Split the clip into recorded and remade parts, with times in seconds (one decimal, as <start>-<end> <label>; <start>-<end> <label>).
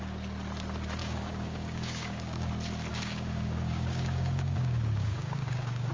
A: 0.0-1.0 recorded; 1.0-2.5 remade; 2.5-2.9 recorded; 2.9-5.9 remade